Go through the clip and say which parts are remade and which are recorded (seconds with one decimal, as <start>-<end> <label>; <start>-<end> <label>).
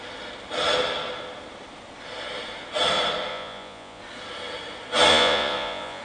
0.0-3.3 recorded; 3.3-4.0 remade; 4.0-5.1 recorded; 5.1-6.0 remade